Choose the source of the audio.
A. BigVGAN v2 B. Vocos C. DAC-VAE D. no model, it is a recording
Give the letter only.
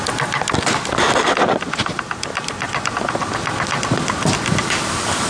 D